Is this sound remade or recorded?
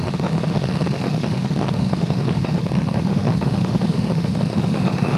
remade